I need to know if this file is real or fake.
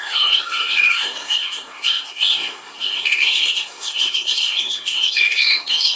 fake